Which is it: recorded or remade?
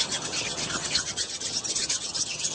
remade